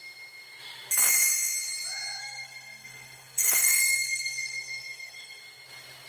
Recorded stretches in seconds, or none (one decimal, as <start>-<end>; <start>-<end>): 0.0-2.2; 5.4-6.1